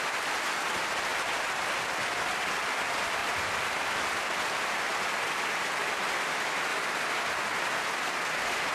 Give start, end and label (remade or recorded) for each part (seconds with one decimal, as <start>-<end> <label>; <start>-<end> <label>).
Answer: 0.0-3.2 recorded; 3.2-5.5 remade; 5.5-6.7 recorded; 6.7-7.4 remade; 7.4-8.7 recorded